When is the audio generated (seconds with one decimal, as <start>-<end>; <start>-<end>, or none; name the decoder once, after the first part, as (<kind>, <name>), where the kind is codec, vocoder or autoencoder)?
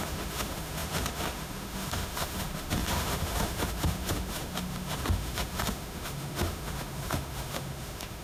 0.0-8.2 (autoencoder, DAC-VAE)